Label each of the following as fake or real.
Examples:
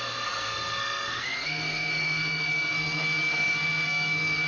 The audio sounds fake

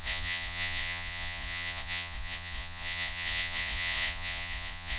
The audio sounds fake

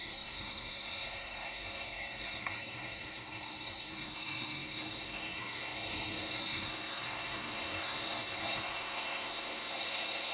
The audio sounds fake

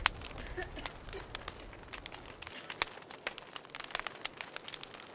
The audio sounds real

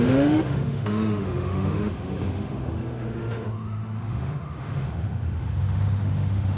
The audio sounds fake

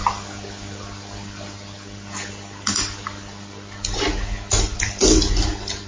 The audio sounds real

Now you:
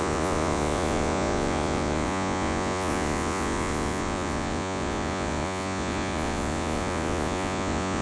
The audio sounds fake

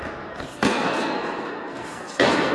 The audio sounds fake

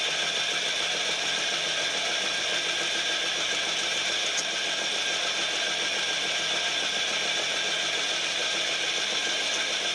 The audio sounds real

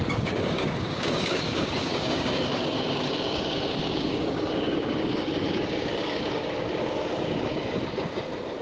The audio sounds fake